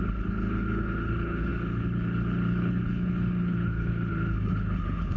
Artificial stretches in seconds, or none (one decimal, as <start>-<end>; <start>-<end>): 0.0-5.2